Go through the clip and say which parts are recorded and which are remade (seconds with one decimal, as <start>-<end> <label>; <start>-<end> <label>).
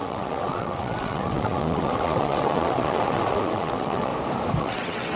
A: 0.0-4.1 remade; 4.1-4.6 recorded; 4.6-5.2 remade